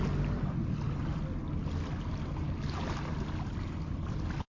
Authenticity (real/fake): real